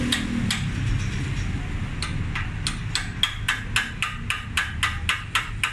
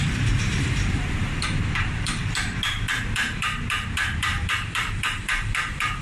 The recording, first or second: first